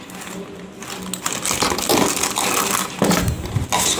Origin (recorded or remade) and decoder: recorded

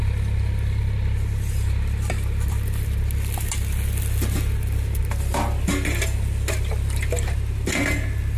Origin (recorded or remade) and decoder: recorded